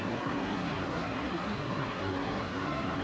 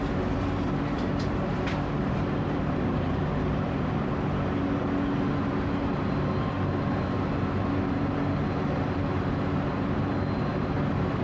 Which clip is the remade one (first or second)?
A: first